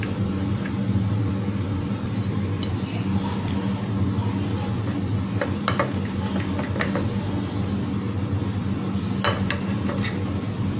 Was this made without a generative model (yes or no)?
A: yes